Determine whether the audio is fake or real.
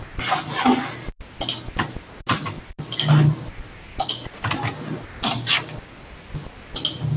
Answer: real